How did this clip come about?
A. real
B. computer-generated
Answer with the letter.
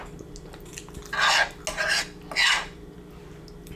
A